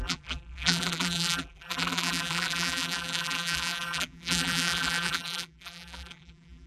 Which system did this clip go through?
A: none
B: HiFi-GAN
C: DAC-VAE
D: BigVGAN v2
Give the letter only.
D